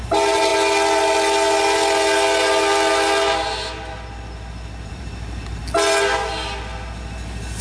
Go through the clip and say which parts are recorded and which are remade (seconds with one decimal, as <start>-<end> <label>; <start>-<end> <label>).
0.0-0.5 remade; 0.5-4.9 recorded; 4.9-5.6 remade; 5.6-7.6 recorded